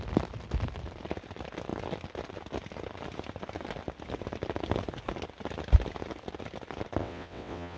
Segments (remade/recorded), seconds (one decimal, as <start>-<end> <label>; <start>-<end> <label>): 0.0-7.0 recorded; 7.0-7.8 remade